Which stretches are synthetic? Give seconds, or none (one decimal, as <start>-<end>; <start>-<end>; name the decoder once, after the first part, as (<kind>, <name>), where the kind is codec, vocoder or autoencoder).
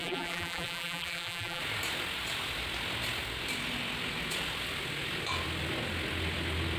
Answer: 0.0-1.6 (vocoder, BigVGAN v2)